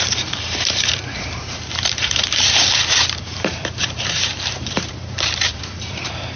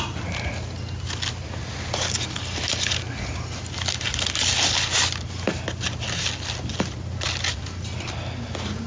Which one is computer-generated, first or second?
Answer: first